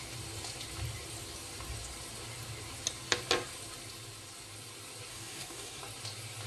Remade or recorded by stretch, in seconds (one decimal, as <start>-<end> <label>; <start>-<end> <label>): 0.0-5.1 recorded; 5.1-5.8 remade; 5.8-6.5 recorded

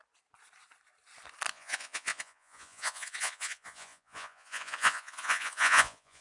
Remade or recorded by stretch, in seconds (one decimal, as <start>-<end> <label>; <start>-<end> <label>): 0.0-1.5 recorded; 1.5-6.2 remade

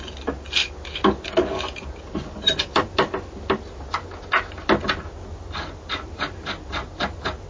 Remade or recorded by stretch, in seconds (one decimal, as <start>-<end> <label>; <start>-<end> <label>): 0.0-7.5 recorded

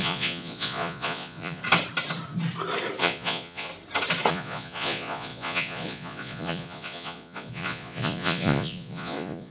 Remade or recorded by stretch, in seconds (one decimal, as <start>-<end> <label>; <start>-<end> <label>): 0.0-1.6 remade; 1.6-3.0 recorded; 3.0-3.7 remade; 3.7-4.3 recorded; 4.3-9.5 remade

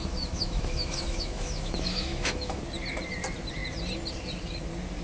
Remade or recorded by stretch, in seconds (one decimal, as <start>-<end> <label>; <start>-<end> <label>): 0.0-2.6 remade; 2.6-5.0 recorded

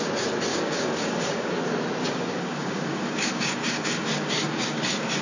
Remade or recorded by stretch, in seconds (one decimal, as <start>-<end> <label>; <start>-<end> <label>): 0.0-0.5 recorded; 0.5-1.5 remade; 1.5-2.0 recorded; 2.0-5.2 remade

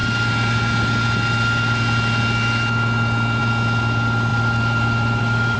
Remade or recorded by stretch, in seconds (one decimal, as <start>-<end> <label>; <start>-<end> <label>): 0.0-4.3 recorded; 4.3-5.6 remade

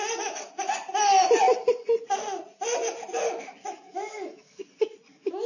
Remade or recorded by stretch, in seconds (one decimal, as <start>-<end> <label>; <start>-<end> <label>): 0.0-3.3 recorded; 3.3-4.6 remade; 4.6-5.1 recorded; 5.1-5.5 remade